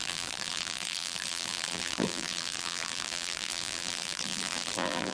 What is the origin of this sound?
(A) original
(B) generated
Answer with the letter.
B